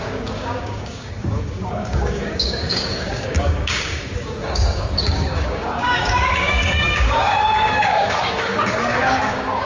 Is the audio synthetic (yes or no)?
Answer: yes